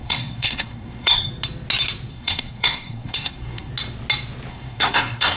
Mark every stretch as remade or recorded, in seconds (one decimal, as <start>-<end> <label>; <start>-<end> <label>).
0.0-1.3 remade; 1.3-2.1 recorded; 2.1-3.7 remade; 3.7-4.5 recorded; 4.5-5.4 remade

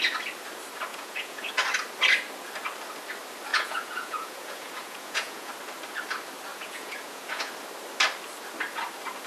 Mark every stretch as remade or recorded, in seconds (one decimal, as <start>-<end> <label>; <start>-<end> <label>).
0.0-0.9 recorded; 0.9-1.5 remade; 1.5-3.5 recorded; 3.5-5.5 remade; 5.5-6.5 recorded; 6.5-7.5 remade; 7.5-9.3 recorded